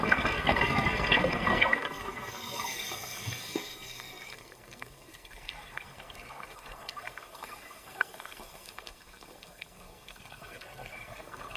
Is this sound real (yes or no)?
no